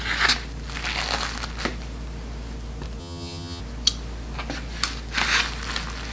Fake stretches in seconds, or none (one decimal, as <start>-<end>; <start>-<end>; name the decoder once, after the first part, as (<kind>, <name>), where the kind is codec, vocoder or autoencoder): 3.0-3.6 (vocoder, HiFi-GAN)